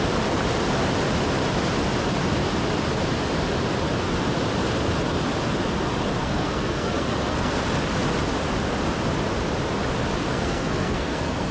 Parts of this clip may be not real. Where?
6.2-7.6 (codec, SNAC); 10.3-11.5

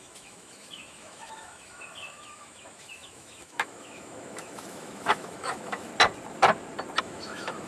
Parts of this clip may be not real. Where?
0.0-5.9 (autoencoder, DAC-VAE); 7.0-7.7

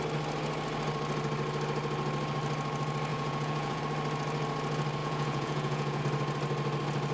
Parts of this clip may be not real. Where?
3.1-3.8 (vocoder, Vocos); 5.0-6.0

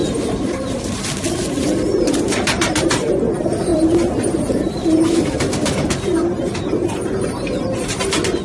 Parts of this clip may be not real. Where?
0.0-1.0 (vocoder, BigVGAN v2); 1.9-3.1; 3.7-6.9

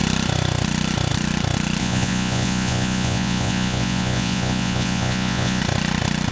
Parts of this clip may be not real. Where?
1.8-5.6 (vocoder, Vocos)